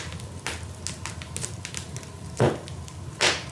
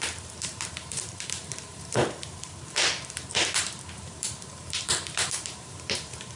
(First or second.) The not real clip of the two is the second